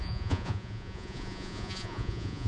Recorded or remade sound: remade